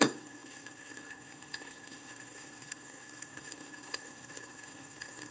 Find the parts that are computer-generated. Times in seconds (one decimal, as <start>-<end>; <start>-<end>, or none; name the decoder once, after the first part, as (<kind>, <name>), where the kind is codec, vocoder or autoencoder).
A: 0.0-5.3 (codec, SNAC)